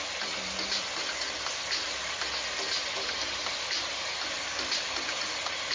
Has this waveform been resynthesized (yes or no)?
no